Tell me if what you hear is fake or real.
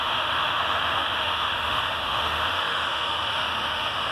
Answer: fake